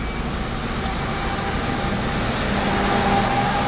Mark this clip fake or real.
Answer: real